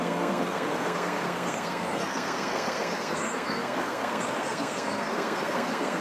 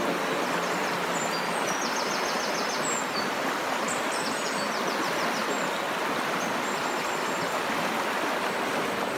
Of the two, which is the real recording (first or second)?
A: second